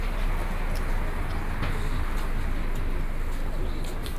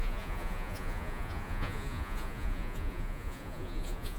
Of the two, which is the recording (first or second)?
first